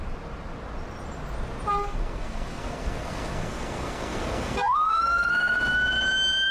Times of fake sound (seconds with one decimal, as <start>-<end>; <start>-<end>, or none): 1.7-5.6